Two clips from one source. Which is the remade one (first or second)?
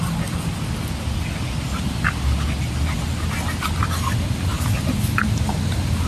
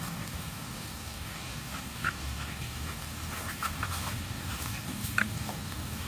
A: second